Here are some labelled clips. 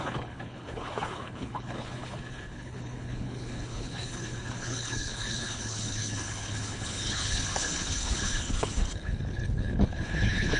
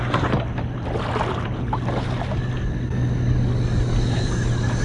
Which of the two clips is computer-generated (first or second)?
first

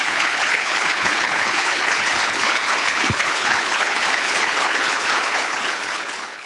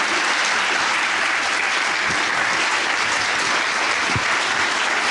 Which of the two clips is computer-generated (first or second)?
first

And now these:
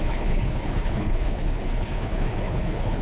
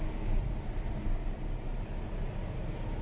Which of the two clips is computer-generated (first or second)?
first